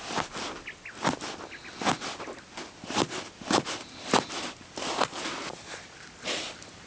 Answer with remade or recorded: recorded